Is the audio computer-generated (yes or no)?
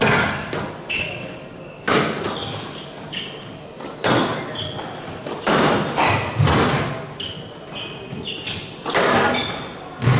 no